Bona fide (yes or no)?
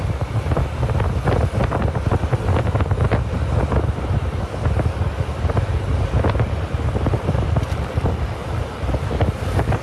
yes